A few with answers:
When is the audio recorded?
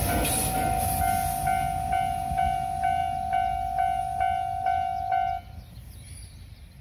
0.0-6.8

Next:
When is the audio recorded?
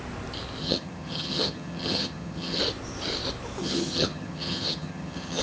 0.0-0.6; 2.6-3.6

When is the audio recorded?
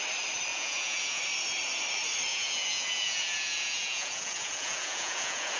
0.0-0.5; 1.2-2.3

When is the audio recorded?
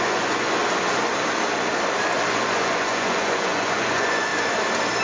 0.6-2.3; 4.3-5.0